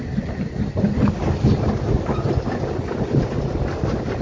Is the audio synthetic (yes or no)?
no